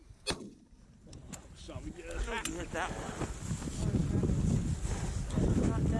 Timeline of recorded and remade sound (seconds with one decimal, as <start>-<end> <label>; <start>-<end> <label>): 0.0-6.0 recorded

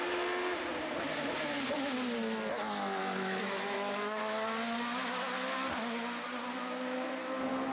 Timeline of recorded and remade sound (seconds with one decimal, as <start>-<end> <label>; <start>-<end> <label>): 0.0-3.0 recorded; 3.0-4.2 remade; 4.2-7.7 recorded

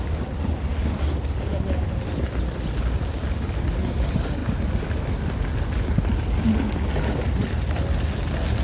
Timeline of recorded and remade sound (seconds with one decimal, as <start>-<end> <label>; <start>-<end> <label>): 0.0-8.6 recorded

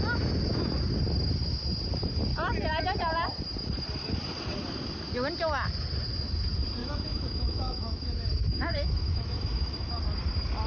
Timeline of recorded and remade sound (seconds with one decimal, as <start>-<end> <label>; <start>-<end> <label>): 0.0-6.8 recorded; 6.8-9.9 remade; 9.9-10.7 recorded

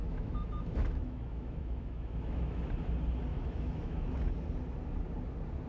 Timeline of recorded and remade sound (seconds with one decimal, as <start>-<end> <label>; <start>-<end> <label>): 0.0-2.6 remade; 2.6-3.3 recorded; 3.3-4.2 remade; 4.2-5.7 recorded

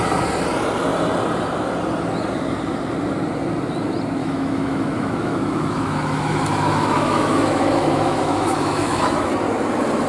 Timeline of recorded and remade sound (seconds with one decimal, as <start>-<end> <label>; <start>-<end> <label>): 0.0-4.2 recorded; 4.2-9.3 remade; 9.3-10.1 recorded

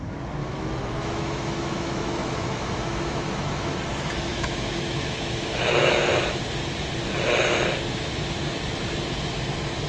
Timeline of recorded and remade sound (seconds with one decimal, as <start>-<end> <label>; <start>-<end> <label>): 0.0-0.4 recorded; 0.4-3.7 remade; 3.7-4.3 recorded; 4.3-6.4 remade; 6.4-9.9 recorded